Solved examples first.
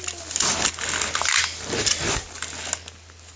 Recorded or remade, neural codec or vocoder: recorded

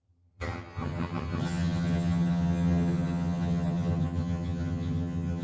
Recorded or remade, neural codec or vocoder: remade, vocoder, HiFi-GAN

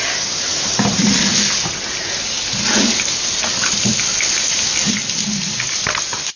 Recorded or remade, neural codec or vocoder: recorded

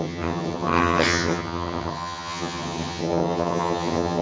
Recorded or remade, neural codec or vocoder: remade, vocoder, HiFi-GAN